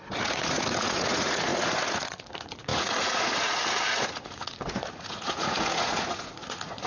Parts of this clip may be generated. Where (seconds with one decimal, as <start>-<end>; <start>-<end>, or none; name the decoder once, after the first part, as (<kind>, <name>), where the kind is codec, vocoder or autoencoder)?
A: 0.0-6.9 (vocoder, Vocos)